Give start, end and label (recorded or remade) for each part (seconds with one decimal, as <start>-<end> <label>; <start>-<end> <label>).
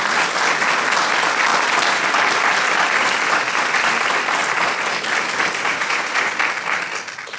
0.0-5.7 recorded; 5.7-6.3 remade; 6.3-7.4 recorded